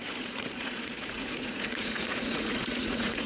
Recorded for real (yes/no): no